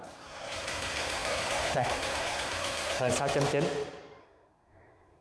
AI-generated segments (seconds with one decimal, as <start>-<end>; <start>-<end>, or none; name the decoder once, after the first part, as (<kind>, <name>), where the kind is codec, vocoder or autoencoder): 0.0-3.1 (codec, SNAC); 4.2-5.2